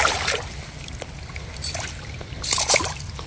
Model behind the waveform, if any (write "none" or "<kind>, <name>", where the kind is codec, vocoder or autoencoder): none